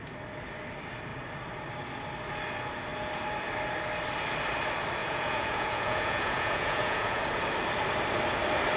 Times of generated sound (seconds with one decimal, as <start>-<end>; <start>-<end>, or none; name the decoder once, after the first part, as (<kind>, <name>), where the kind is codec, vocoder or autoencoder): 5.0-7.2 (vocoder, Vocos)